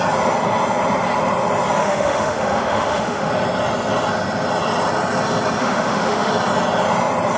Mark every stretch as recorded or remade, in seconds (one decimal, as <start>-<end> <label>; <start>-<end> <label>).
0.0-1.8 recorded; 1.8-3.3 remade; 3.3-5.6 recorded; 5.6-6.3 remade; 6.3-7.4 recorded